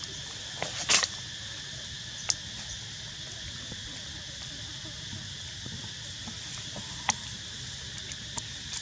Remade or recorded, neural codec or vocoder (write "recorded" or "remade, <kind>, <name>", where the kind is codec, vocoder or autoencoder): recorded